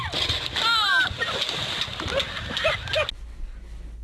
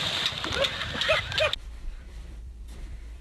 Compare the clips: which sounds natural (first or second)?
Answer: first